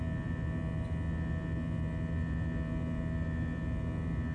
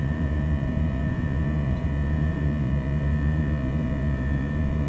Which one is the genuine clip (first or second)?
first